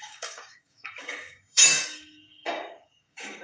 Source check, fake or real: fake